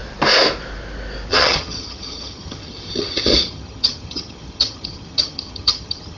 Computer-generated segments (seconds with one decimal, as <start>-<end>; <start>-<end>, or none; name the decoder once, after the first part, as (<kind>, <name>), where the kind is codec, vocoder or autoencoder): 1.3-6.2 (vocoder, HiFi-GAN)